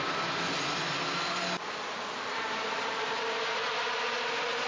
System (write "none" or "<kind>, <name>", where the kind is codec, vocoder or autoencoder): none